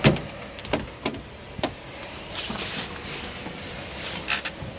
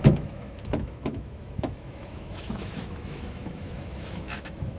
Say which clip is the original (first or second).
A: first